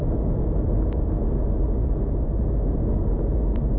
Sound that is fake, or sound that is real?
real